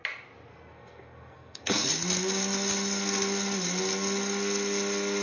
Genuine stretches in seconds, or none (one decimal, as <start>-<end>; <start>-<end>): 0.0-0.5; 1.9-5.2